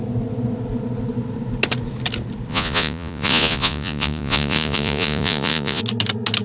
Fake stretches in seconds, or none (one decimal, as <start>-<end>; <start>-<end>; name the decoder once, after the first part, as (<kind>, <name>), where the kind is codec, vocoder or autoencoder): 2.5-5.8 (vocoder, Vocos)